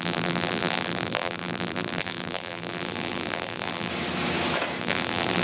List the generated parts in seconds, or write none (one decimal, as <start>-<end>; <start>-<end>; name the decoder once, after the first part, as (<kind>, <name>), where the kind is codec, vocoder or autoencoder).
0.0-3.9 (vocoder, BigVGAN v2); 4.8-5.4